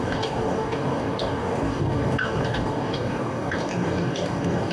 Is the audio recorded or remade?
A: remade